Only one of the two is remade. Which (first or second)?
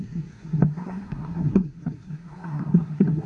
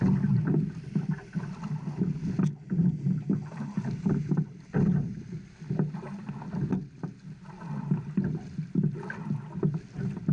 first